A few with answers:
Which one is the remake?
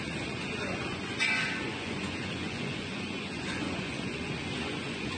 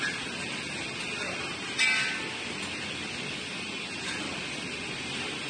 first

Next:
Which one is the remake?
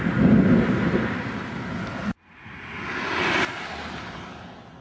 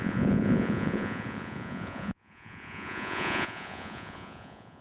second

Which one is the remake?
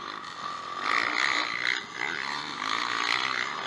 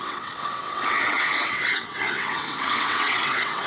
second